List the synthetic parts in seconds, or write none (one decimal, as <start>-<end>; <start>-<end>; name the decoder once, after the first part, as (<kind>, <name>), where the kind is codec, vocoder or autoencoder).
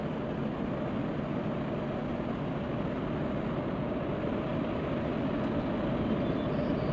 none